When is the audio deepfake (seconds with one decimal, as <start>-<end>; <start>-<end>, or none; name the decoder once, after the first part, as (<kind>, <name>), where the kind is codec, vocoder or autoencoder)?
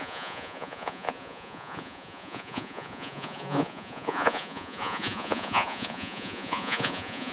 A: 0.0-7.3 (vocoder, Vocos)